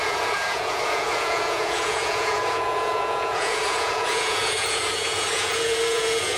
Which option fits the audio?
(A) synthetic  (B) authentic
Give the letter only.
A